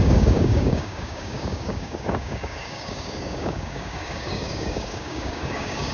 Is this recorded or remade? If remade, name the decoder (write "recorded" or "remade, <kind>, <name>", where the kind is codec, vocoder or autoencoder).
remade, codec, DAC